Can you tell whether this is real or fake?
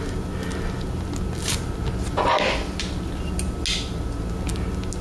real